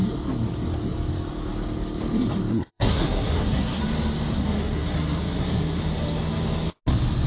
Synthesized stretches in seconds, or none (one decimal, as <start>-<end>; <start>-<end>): 2.5-3.8; 4.3-5.8